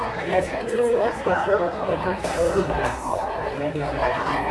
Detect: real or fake fake